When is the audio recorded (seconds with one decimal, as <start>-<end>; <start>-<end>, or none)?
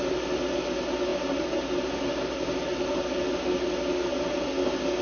0.0-5.0